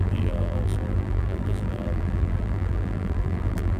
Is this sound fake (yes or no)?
yes